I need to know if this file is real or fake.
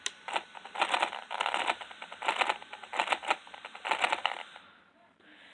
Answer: real